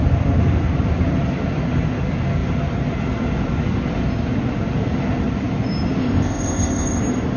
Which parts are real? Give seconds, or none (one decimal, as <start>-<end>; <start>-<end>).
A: 0.0-6.0; 7.0-7.4